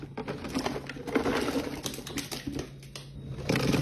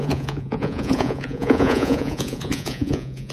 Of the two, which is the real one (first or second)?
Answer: first